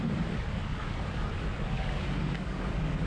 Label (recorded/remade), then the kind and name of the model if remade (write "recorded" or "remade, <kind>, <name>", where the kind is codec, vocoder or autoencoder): remade, codec, DAC